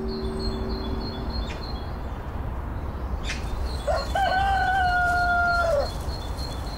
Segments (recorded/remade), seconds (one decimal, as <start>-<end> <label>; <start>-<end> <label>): 0.0-2.7 recorded; 2.7-5.9 remade; 5.9-6.8 recorded